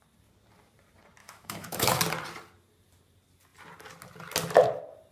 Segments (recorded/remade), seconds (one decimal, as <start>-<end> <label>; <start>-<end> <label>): 0.0-1.2 recorded; 1.2-2.0 remade; 2.0-5.1 recorded